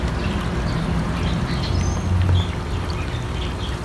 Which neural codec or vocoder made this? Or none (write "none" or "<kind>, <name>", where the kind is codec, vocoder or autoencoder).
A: none